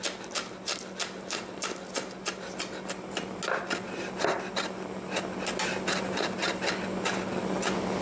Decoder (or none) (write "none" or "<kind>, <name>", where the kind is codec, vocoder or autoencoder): none